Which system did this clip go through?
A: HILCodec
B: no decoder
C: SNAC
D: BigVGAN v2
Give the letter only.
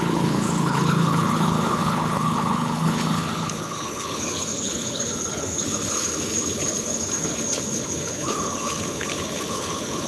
A